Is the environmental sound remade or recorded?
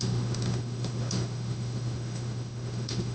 remade